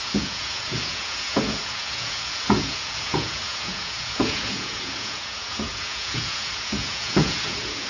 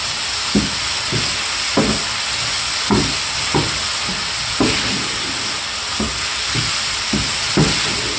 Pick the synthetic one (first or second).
first